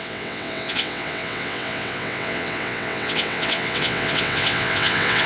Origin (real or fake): fake